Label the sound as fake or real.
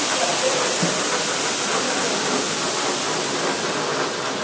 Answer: real